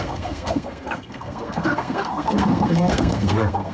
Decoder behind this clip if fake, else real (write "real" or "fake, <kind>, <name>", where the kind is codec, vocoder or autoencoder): fake, codec, SNAC